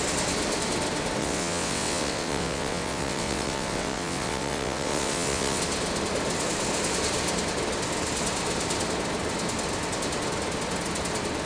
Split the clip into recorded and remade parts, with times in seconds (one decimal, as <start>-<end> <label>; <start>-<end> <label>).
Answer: 0.0-1.2 recorded; 1.2-5.6 remade; 5.6-11.5 recorded